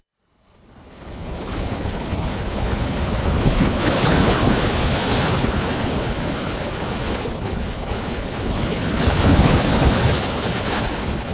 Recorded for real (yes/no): no